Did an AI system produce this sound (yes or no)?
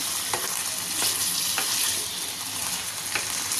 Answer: no